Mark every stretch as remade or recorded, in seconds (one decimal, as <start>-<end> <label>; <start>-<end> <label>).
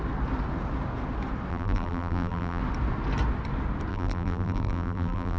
0.0-1.5 recorded; 1.5-2.6 remade; 2.6-3.9 recorded; 3.9-5.4 remade